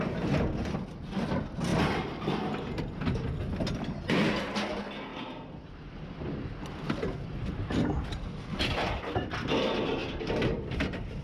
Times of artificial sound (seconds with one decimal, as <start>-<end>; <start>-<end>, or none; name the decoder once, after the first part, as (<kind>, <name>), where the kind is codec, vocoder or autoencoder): 10.0-11.2 (vocoder, BigVGAN v2)